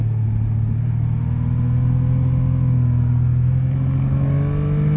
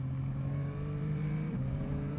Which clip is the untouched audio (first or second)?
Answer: first